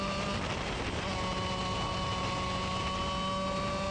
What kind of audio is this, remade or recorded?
recorded